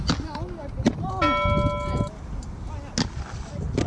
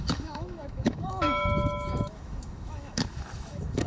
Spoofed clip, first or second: second